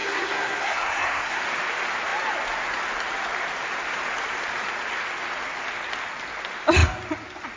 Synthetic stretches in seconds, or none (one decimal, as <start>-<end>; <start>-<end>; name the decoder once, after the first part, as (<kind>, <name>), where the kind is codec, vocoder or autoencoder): 0.0-1.4 (codec, SNAC)